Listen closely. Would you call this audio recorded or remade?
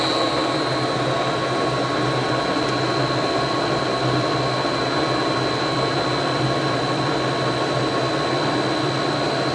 recorded